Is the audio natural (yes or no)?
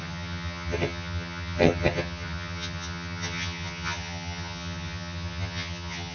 no